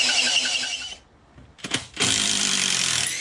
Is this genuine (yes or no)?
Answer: yes